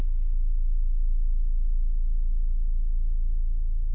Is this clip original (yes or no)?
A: yes